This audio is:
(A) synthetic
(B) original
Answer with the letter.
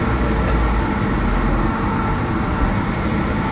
B